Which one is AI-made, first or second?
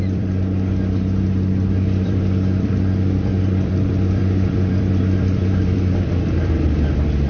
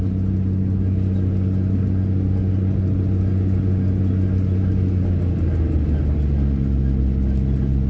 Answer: first